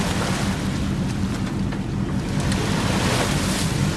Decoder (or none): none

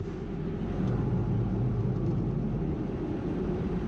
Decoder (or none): none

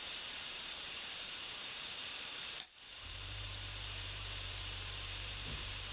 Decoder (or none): vocoder, BigVGAN v2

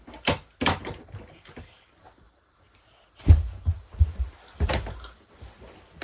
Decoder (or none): none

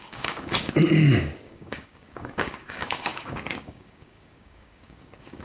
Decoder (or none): codec, DAC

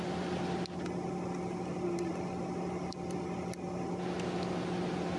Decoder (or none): none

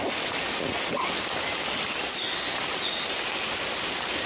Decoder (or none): none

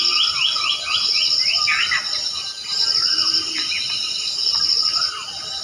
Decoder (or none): none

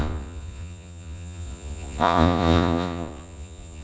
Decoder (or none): vocoder, Vocos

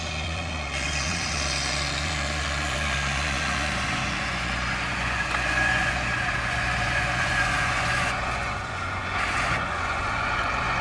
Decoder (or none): vocoder, Vocos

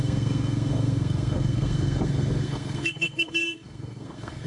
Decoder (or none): codec, SNAC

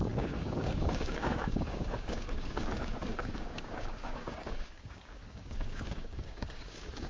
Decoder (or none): codec, DAC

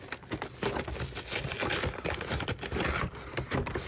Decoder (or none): none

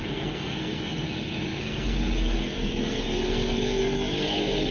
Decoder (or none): codec, SNAC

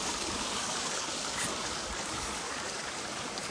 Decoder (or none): codec, DAC